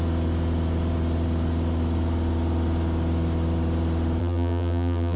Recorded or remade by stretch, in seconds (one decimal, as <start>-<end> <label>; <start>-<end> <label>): 0.0-4.2 recorded; 4.2-5.2 remade